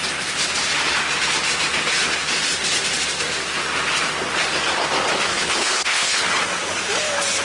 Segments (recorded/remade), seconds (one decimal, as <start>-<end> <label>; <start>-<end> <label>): 0.0-5.3 recorded; 5.3-6.3 remade; 6.3-7.4 recorded